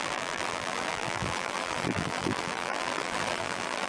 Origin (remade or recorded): remade